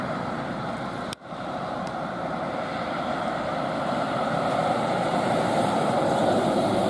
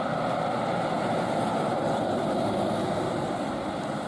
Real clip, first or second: second